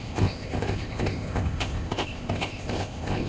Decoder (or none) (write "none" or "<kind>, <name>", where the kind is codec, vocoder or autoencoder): codec, ZipCodec